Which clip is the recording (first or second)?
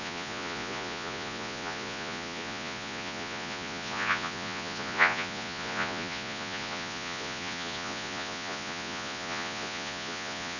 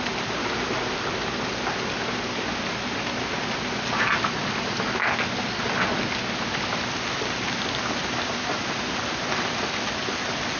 second